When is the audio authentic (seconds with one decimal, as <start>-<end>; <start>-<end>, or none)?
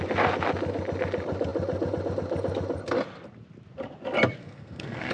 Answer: 0.0-4.4